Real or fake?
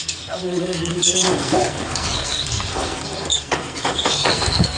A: fake